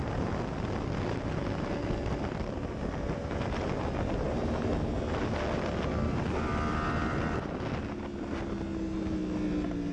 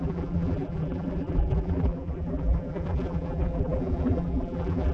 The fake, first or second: second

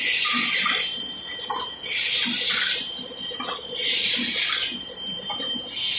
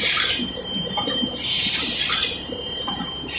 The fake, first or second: second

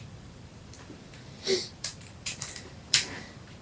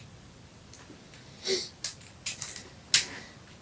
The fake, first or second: first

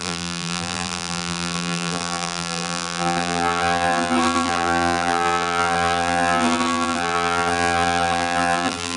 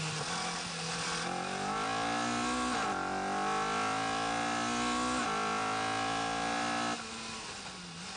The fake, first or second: first